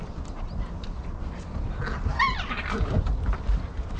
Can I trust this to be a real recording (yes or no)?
yes